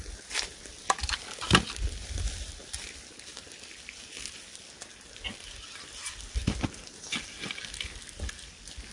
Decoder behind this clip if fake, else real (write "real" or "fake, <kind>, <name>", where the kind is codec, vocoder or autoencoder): real